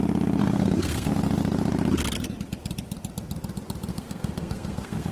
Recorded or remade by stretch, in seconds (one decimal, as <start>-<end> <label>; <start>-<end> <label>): 0.0-0.4 recorded; 0.4-1.1 remade; 1.1-3.9 recorded; 3.9-5.1 remade